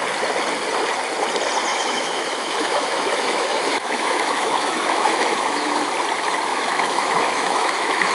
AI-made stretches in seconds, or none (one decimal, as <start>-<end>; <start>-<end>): 1.7-5.9; 6.5-8.1